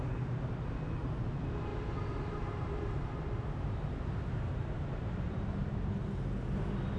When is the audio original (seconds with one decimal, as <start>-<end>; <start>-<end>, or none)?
0.0-1.7; 5.9-7.0